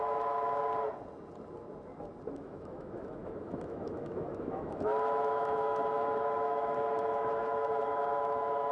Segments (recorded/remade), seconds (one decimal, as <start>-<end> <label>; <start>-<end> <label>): 0.0-0.6 remade; 0.6-2.4 recorded; 2.4-8.7 remade